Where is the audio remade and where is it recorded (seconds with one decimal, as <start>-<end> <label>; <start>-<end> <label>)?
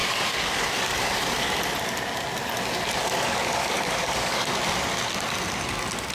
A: 0.0-1.5 remade; 1.5-3.0 recorded; 3.0-4.5 remade; 4.5-6.1 recorded